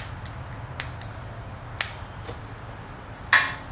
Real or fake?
real